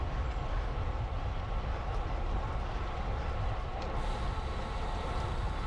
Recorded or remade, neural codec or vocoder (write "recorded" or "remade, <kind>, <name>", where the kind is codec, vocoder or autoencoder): recorded